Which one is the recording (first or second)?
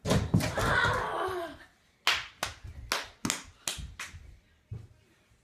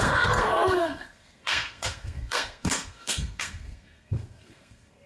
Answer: first